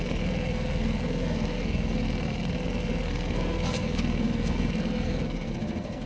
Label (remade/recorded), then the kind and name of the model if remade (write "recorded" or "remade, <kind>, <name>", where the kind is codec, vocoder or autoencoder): remade, codec, SNAC